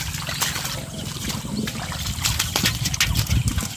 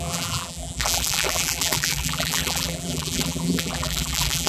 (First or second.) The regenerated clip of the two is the second